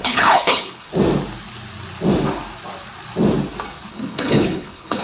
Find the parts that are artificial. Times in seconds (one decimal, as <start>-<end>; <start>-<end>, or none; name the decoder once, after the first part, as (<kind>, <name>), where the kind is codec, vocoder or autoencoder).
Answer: 0.0-0.9 (codec, HILCodec); 3.9-5.0